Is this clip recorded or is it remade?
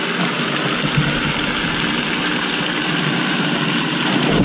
recorded